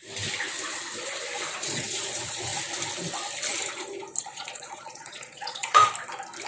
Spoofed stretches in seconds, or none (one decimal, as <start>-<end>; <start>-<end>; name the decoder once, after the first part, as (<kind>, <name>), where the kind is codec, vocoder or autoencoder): 1.6-2.5 (vocoder, Vocos); 4.2-5.8